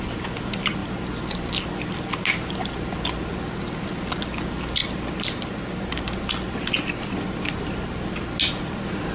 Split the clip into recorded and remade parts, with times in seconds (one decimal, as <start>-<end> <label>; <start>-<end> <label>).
0.0-9.1 recorded